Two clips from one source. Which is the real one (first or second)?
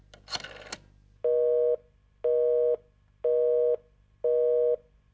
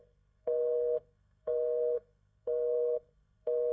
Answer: first